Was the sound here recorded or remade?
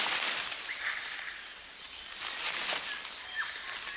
remade